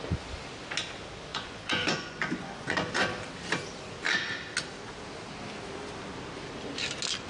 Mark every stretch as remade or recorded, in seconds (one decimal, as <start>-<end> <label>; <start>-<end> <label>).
0.0-1.3 recorded; 1.3-2.9 remade; 2.9-7.3 recorded